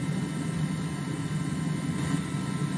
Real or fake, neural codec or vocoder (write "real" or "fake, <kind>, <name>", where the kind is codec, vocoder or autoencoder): real